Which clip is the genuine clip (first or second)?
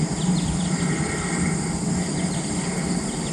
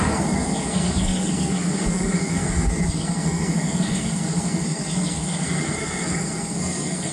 first